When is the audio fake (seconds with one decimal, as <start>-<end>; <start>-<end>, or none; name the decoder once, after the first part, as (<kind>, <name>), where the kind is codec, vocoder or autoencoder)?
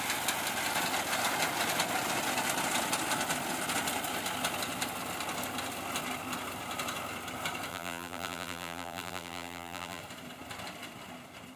7.7-10.0 (vocoder, BigVGAN v2)